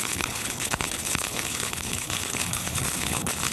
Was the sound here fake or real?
fake